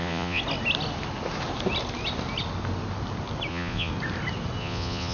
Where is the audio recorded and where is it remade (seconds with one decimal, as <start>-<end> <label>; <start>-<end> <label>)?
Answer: 0.0-0.4 remade; 0.4-3.5 recorded; 3.5-3.9 remade; 3.9-4.6 recorded; 4.6-5.1 remade